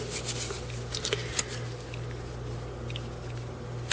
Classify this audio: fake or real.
real